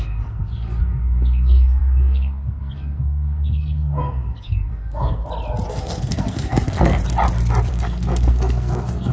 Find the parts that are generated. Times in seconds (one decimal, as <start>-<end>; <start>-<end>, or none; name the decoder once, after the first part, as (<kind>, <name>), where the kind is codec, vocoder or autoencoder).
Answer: 0.0-5.2 (codec, SNAC); 5.7-7.0; 7.7-9.1